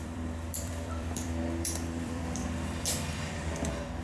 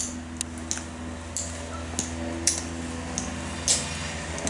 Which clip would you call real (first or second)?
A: second